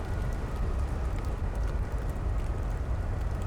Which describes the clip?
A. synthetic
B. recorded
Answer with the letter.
B